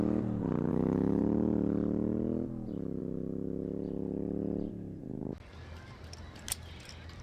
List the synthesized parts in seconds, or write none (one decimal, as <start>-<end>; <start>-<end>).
0.7-1.2